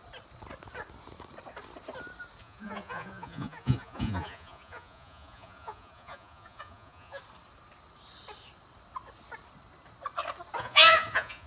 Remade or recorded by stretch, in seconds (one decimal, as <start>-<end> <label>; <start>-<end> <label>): 0.0-2.4 recorded; 2.4-7.2 remade; 7.2-10.6 recorded; 10.6-11.5 remade